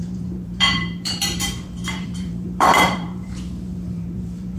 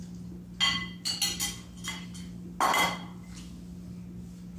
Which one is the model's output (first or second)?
first